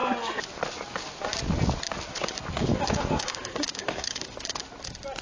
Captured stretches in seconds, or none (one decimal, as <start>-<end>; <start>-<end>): 0.0-2.7; 4.2-5.2